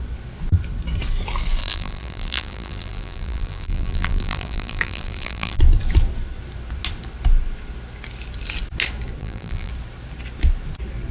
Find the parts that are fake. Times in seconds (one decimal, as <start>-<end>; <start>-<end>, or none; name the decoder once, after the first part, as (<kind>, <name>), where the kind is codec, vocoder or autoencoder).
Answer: 1.6-5.6 (vocoder, BigVGAN v2); 9.2-9.7